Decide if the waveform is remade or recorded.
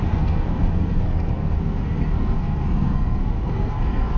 remade